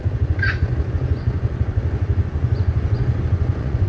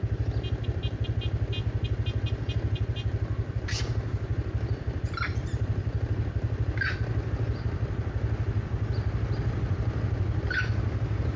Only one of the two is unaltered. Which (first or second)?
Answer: second